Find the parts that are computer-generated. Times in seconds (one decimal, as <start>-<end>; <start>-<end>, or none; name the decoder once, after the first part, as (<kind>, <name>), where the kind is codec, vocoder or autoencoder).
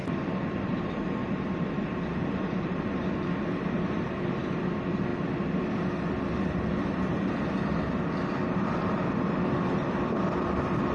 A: 0.0-10.9 (vocoder, BigVGAN v2)